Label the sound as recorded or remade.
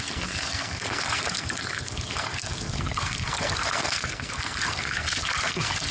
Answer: remade